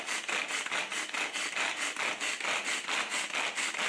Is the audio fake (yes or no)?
no